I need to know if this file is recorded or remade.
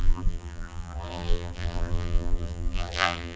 remade